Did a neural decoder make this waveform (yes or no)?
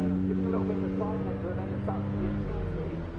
no